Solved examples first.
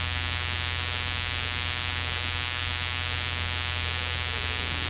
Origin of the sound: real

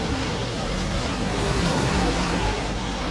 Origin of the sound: fake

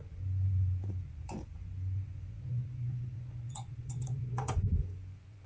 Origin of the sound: fake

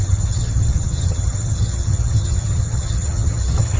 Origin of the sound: fake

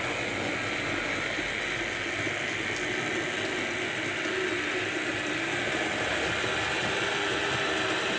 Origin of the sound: real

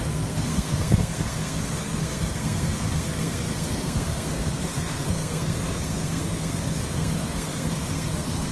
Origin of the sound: fake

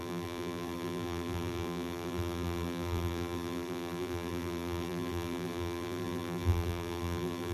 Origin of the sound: fake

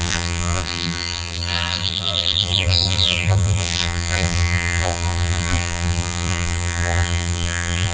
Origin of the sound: fake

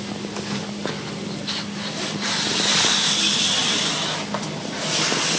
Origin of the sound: fake